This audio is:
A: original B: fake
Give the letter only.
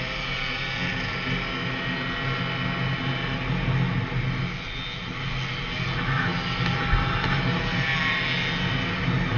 A